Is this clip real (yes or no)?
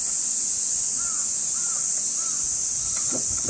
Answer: no